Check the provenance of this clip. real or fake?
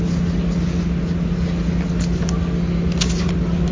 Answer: real